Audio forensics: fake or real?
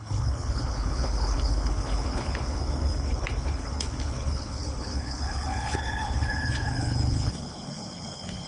fake